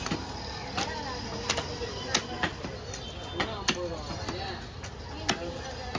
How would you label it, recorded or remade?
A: recorded